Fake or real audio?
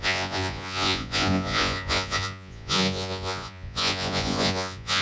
fake